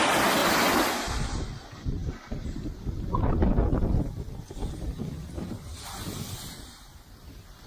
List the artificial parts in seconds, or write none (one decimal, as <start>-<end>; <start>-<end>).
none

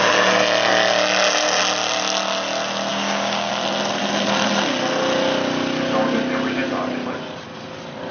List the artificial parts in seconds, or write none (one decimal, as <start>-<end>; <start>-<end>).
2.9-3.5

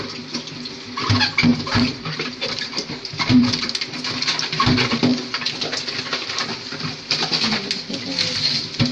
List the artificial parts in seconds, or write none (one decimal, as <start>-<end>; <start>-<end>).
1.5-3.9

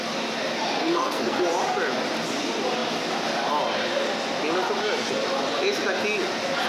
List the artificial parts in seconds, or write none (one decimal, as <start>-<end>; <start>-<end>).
0.8-1.4

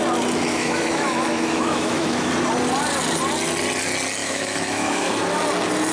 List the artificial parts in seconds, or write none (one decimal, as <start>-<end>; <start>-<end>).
0.5-2.3; 4.2-5.1

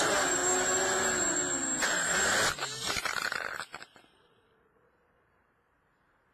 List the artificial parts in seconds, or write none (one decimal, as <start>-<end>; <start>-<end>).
0.0-0.4; 4.0-6.3